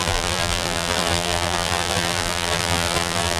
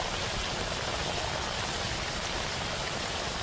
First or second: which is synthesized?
first